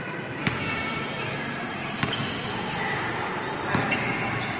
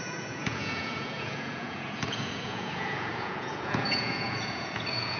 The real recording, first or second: first